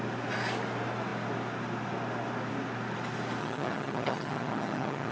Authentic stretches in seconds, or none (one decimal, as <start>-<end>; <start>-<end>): 0.0-3.4